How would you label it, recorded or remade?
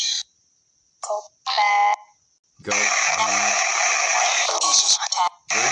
recorded